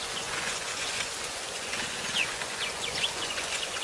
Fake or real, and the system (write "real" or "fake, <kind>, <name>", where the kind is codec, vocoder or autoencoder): fake, vocoder, Vocos